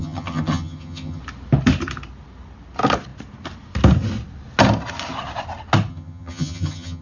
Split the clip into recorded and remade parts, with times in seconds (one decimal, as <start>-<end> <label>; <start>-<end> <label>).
0.0-1.2 remade; 1.2-5.9 recorded; 5.9-7.0 remade